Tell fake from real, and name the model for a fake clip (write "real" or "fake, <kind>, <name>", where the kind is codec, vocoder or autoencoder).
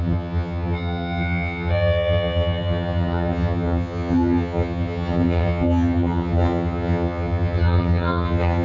fake, vocoder, HiFi-GAN